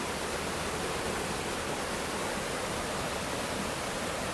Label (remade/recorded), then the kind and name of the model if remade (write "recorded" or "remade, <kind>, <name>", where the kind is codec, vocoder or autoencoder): recorded